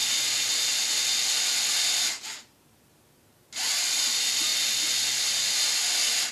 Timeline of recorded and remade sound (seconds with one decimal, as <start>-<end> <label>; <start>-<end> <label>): 0.0-6.3 recorded